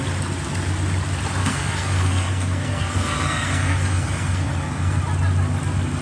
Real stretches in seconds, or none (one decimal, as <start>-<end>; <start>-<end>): 0.0-1.4; 5.0-6.0